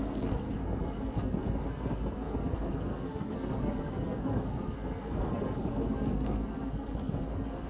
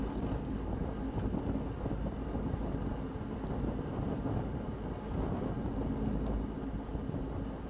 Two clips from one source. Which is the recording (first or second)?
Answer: second